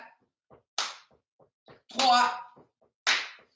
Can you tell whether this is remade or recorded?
recorded